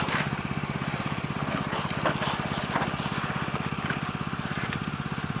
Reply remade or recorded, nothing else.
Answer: recorded